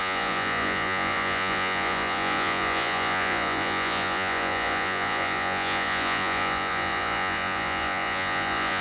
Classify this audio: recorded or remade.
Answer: remade